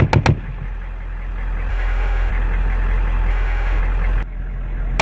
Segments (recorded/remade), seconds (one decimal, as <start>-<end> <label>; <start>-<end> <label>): 0.0-1.7 recorded; 1.7-2.3 remade; 2.3-3.3 recorded; 3.3-3.8 remade; 3.8-5.0 recorded